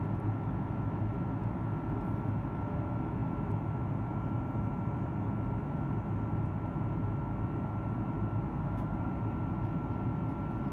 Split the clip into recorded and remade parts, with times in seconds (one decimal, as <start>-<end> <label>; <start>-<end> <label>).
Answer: 0.0-8.5 recorded; 8.5-9.1 remade; 9.1-10.7 recorded